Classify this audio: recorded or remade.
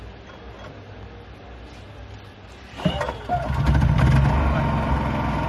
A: recorded